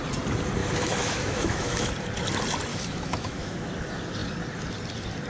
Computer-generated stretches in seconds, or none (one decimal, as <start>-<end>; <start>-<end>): 0.6-1.9; 2.7-3.7

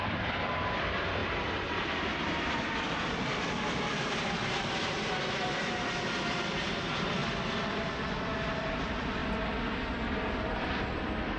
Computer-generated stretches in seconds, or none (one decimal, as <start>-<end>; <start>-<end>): 0.0-9.2; 10.8-11.4

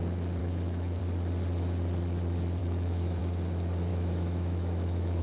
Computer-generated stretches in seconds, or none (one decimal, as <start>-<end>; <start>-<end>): 0.4-1.0; 2.6-3.2; 3.9-5.2

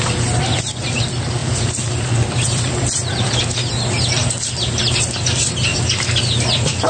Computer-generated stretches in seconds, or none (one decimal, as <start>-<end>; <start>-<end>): 1.4-3.3

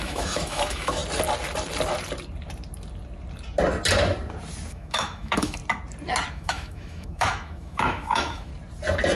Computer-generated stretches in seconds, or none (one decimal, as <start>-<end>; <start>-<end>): 0.0-1.0; 4.7-5.6; 6.3-8.5

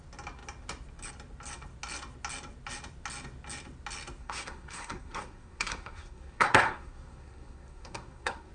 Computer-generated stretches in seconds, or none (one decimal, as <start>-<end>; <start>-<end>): 4.2-8.5

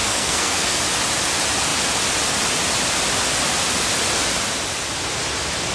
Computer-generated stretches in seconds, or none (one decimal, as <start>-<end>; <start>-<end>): 0.0-0.8